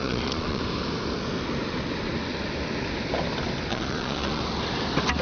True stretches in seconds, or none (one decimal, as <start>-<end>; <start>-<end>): 0.6-3.7; 4.4-5.2